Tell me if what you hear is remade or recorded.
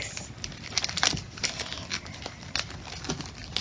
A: recorded